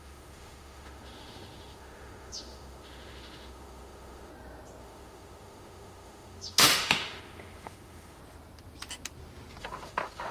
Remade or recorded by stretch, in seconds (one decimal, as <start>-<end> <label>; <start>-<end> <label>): 0.0-4.3 remade; 4.3-4.8 recorded; 4.8-8.2 remade; 8.2-9.6 recorded; 9.6-10.3 remade